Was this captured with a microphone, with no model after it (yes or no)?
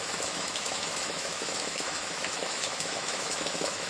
no